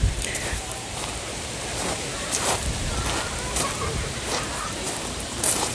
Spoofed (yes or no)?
yes